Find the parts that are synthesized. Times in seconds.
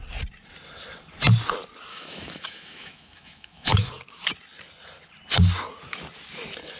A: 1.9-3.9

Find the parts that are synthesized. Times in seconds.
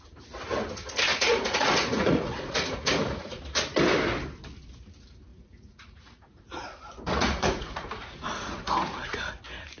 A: 1.1-3.4; 5.3-9.3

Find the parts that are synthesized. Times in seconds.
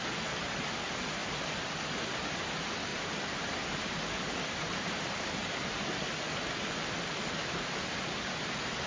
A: 2.9-5.5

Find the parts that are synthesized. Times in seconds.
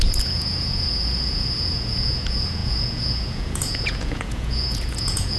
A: 0.0-5.4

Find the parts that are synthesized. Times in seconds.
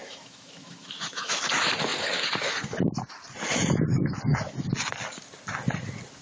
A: 0.0-1.4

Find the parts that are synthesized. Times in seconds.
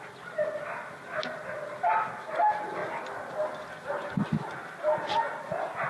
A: none